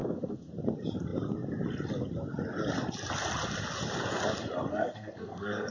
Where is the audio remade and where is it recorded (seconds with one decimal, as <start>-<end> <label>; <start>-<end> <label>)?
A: 0.0-0.5 remade; 0.5-4.7 recorded; 4.7-5.7 remade